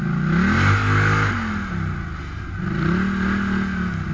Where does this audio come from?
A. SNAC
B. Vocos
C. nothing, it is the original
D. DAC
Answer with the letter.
C